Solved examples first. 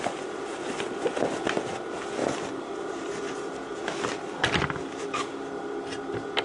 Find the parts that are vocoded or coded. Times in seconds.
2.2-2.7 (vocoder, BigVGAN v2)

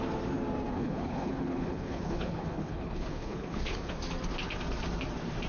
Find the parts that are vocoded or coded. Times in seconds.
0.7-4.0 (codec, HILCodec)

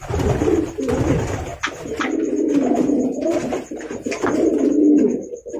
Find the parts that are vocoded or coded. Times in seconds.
0.0-1.5 (vocoder, BigVGAN v2); 2.0-5.6